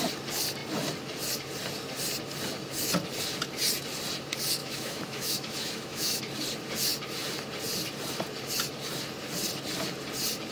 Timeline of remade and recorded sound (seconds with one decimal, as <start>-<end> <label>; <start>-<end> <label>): 0.0-4.6 recorded; 4.6-6.2 remade; 6.2-10.5 recorded